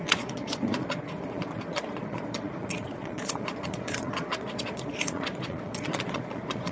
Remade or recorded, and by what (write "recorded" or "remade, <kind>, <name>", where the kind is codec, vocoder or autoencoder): remade, vocoder, Vocos